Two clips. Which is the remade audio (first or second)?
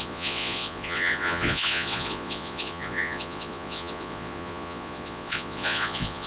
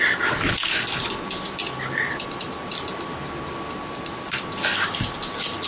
first